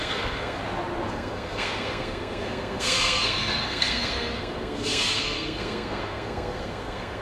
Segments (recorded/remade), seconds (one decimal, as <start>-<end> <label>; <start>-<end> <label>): 0.0-0.6 remade; 0.6-1.1 recorded; 1.1-7.2 remade